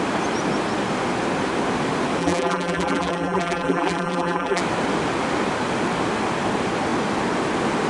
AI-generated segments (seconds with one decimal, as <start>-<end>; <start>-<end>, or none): 2.2-4.6